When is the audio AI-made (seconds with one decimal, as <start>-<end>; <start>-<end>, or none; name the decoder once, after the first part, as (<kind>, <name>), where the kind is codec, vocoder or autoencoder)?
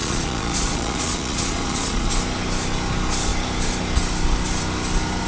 0.0-2.1 (vocoder, Vocos)